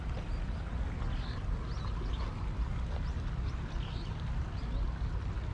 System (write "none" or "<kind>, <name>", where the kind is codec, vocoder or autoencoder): none